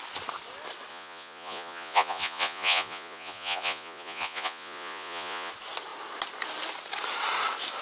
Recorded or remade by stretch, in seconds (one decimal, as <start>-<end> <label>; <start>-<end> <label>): 0.0-0.9 recorded; 0.9-5.5 remade; 5.5-7.8 recorded